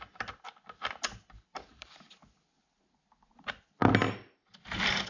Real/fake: real